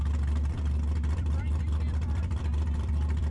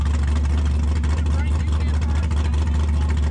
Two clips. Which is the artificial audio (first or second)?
first